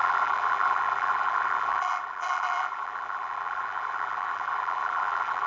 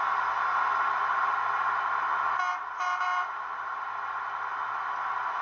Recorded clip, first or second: second